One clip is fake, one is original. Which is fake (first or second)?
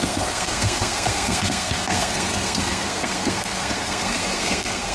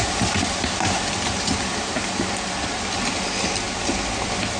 first